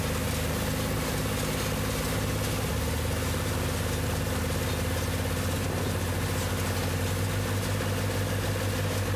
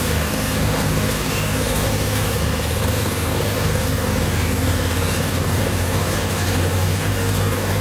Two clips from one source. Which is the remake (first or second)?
second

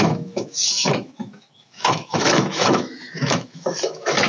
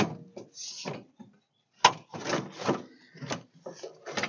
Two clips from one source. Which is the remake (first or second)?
first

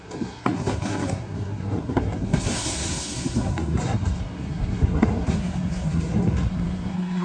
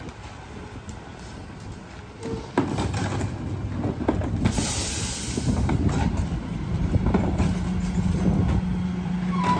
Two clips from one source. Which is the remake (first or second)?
first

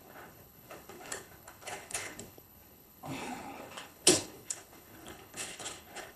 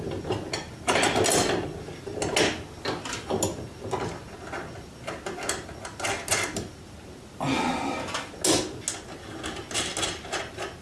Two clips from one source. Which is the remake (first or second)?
first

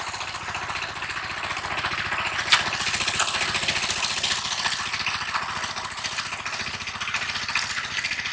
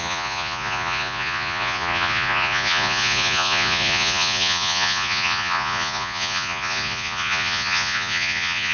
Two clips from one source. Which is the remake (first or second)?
second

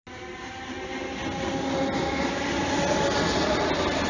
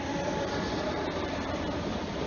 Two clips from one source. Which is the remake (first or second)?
second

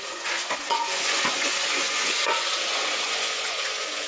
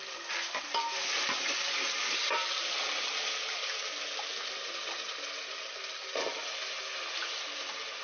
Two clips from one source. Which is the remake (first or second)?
first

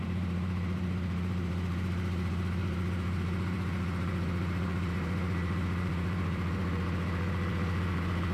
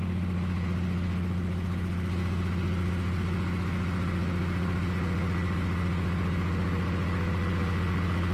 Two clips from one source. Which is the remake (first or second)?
first